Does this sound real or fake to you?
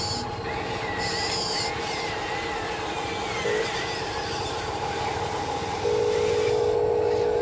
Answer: real